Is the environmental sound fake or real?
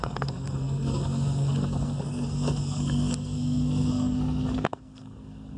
fake